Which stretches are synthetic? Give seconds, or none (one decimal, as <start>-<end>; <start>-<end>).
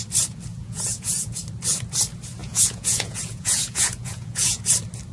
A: 0.5-1.4; 2.4-4.6